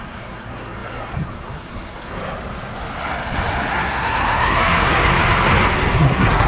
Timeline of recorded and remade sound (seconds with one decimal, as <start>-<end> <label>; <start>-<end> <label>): 0.0-2.2 remade; 2.2-3.7 recorded; 3.7-5.1 remade; 5.1-6.0 recorded; 6.0-6.5 remade